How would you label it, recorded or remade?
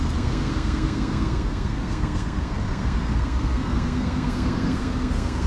remade